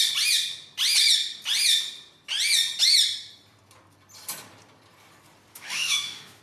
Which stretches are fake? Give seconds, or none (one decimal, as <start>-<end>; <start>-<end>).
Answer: 5.5-6.4